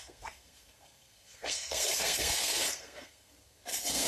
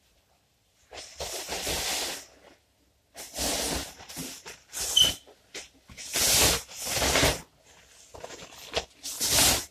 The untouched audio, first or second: second